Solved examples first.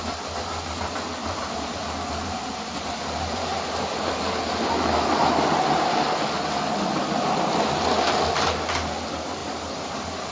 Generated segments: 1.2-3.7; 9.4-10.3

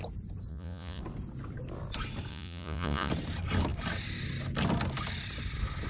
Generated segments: 0.5-1.0; 2.3-3.1